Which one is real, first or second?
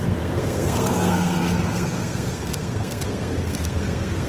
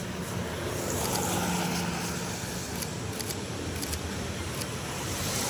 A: second